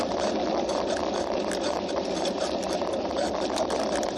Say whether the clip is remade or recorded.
recorded